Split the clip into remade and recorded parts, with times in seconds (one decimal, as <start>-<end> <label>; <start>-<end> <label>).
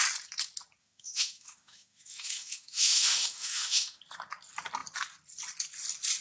0.0-0.8 recorded; 0.8-4.0 remade; 4.0-6.2 recorded